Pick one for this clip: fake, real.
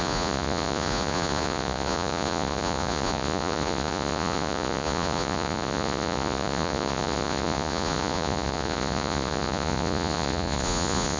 fake